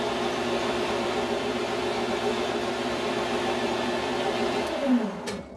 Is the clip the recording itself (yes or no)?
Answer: no